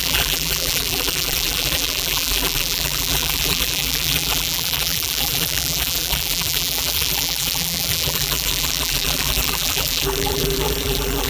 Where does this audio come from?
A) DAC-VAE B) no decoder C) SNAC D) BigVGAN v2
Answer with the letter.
D